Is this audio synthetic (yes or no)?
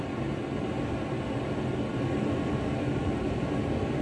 no